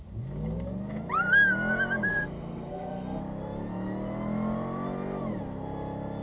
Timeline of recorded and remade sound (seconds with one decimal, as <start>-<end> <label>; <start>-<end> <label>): 0.0-2.1 recorded; 2.1-3.2 remade; 3.2-6.2 recorded